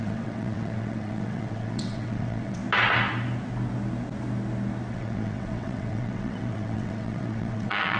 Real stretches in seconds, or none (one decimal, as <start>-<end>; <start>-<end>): 2.6-4.9